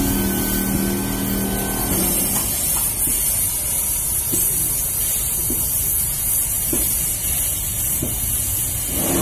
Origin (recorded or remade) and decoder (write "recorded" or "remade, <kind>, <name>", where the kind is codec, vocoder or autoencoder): recorded